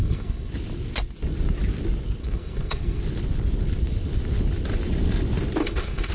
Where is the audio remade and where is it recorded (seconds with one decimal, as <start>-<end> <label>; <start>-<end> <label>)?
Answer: 0.0-0.5 remade; 0.5-2.2 recorded; 2.2-3.0 remade; 3.0-5.6 recorded; 5.6-6.1 remade